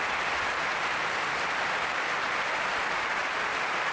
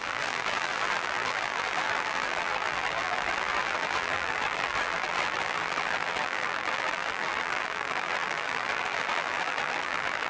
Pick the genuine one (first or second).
first